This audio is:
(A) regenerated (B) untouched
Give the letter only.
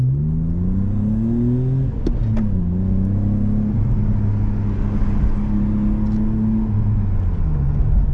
B